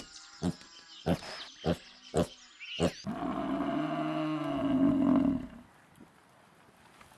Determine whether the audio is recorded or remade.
recorded